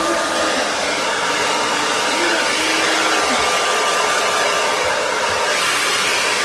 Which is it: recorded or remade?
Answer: recorded